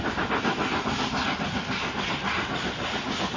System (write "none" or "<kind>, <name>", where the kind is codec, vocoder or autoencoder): none